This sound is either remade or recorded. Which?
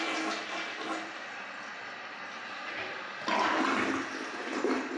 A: recorded